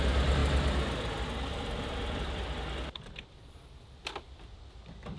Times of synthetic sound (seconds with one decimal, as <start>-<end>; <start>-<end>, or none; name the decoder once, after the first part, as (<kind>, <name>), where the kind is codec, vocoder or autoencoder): 1.5-4.6 (vocoder, BigVGAN v2)